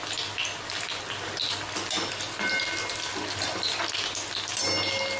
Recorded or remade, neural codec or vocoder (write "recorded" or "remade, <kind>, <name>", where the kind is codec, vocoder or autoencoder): recorded